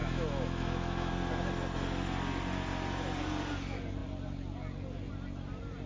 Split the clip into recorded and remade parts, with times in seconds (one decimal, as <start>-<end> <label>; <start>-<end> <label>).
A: 0.0-1.1 remade; 1.1-5.9 recorded

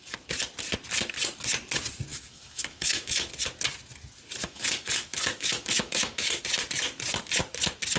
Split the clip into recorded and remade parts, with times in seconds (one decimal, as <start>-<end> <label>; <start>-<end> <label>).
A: 0.0-2.1 recorded; 2.1-3.3 remade; 3.3-4.4 recorded; 4.4-6.4 remade; 6.4-8.0 recorded

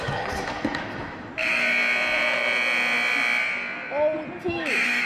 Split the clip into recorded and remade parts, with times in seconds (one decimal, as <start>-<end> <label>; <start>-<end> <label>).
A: 0.0-1.3 remade; 1.3-4.4 recorded; 4.4-5.1 remade

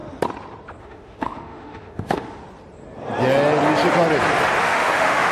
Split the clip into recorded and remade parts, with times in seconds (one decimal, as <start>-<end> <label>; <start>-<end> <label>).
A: 0.0-0.8 recorded; 0.8-2.4 remade; 2.4-4.6 recorded; 4.6-5.3 remade

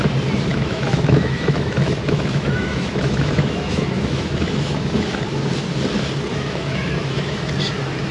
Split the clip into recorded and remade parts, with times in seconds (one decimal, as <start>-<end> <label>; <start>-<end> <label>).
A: 0.0-0.5 recorded; 0.5-5.2 remade; 5.2-6.3 recorded; 6.3-7.5 remade; 7.5-8.1 recorded

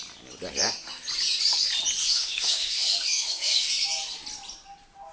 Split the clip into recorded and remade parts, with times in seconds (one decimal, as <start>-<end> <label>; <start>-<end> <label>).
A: 0.0-2.0 recorded; 2.0-3.7 remade; 3.7-5.1 recorded

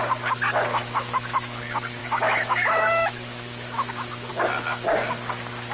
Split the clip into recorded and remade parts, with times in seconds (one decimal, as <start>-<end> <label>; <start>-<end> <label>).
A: 0.0-0.8 recorded; 0.8-1.6 remade; 1.6-2.0 recorded; 2.0-4.3 remade; 4.3-5.7 recorded